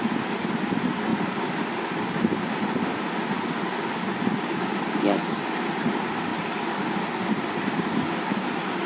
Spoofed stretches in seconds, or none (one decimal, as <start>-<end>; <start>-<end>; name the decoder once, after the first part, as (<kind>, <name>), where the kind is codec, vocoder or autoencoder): none